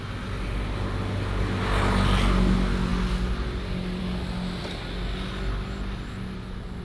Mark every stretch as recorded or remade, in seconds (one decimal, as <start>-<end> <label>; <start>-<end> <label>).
0.0-6.8 recorded